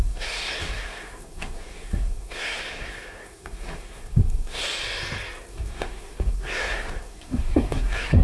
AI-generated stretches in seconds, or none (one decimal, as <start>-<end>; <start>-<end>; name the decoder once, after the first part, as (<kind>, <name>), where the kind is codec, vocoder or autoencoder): 0.0-4.6 (codec, SNAC); 5.5-8.2